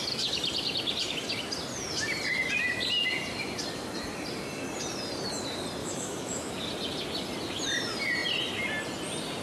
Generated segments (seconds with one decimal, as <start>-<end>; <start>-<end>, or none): 5.8-6.5